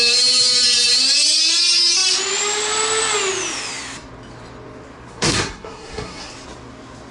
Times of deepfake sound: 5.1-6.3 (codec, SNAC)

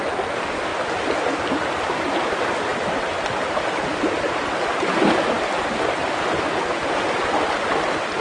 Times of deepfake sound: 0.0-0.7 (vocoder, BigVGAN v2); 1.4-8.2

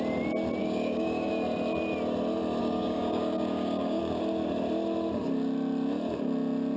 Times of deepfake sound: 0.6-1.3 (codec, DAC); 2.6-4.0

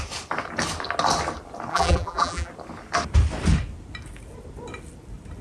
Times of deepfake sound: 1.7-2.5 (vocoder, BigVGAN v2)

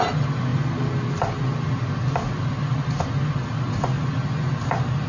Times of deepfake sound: none

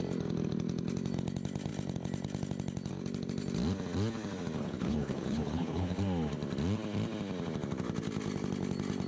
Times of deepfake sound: 4.6-6.0 (codec, HILCodec)

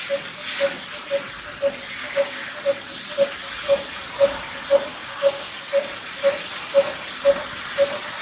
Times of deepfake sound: 2.0-2.5 (codec, DAC); 4.9-5.5

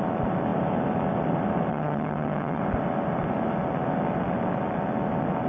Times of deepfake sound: 1.7-2.6 (vocoder, HiFi-GAN)